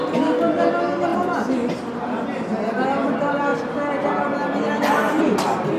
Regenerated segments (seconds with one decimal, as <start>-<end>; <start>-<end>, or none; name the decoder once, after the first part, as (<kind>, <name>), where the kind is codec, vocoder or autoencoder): none